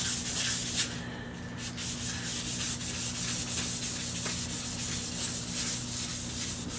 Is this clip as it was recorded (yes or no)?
yes